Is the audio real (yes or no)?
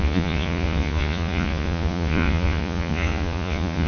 no